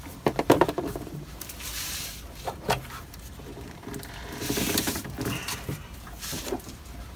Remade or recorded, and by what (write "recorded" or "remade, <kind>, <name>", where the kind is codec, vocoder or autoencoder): remade, vocoder, BigVGAN v2